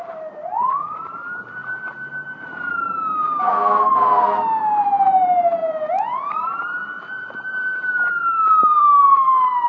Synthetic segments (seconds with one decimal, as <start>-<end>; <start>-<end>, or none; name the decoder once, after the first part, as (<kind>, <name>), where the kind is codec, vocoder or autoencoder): 0.0-1.6 (vocoder, BigVGAN v2); 2.4-3.5; 4.6-9.7